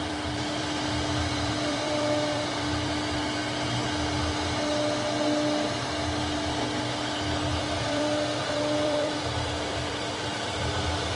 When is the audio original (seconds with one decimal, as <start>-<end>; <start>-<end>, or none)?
3.4-7.6; 10.3-11.2